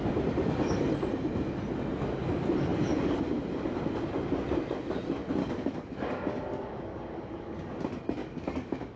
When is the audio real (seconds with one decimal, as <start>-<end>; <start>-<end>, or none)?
0.0-5.4; 7.7-8.2